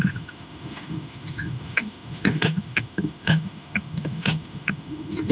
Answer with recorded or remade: remade